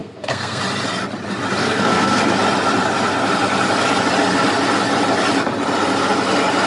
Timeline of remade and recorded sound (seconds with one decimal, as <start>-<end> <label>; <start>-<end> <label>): 0.0-0.6 remade; 0.6-1.6 recorded; 1.6-2.2 remade; 2.2-6.7 recorded